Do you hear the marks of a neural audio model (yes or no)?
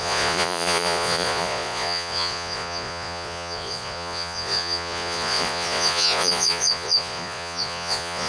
yes